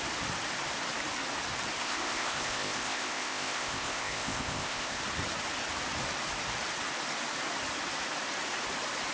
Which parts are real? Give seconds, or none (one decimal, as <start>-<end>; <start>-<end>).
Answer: 0.0-1.8; 5.0-9.1

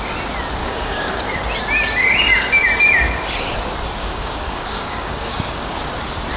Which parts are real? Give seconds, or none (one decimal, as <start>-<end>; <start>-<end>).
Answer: 0.0-0.6; 1.3-4.0; 5.8-6.4

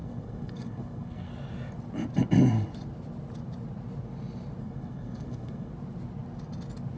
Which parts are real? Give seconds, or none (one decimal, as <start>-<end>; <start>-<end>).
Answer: 1.3-4.6; 5.7-7.0